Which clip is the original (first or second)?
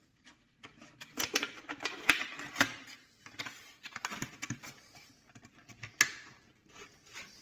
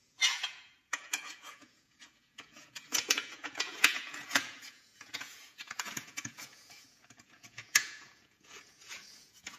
first